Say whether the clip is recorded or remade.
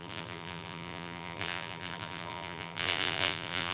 remade